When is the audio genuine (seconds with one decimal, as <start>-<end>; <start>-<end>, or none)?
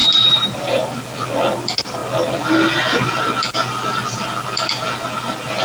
0.8-5.6